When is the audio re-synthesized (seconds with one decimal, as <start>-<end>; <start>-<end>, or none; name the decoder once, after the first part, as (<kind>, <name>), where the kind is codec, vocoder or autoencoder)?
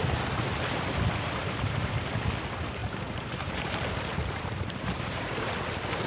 1.4-2.2 (vocoder, BigVGAN v2); 2.8-5.5